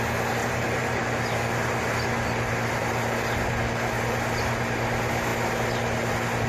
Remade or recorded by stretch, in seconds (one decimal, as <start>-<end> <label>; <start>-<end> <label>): 0.0-0.4 recorded; 0.4-1.0 remade; 1.0-6.5 recorded